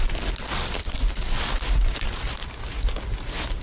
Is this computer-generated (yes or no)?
no